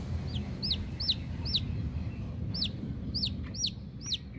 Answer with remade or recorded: recorded